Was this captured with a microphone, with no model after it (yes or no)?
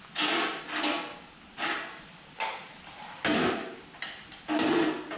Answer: yes